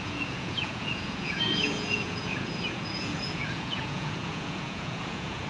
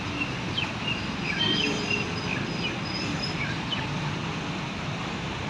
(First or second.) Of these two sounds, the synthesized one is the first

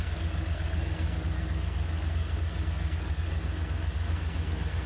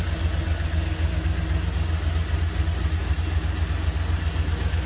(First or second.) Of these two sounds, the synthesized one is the first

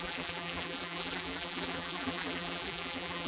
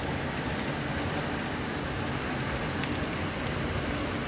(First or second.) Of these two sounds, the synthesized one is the first